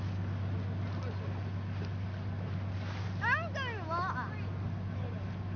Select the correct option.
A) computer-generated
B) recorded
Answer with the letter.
B